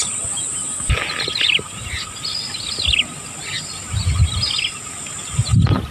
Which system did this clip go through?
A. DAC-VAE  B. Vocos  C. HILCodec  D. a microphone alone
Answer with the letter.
D